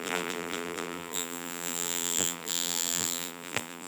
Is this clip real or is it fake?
fake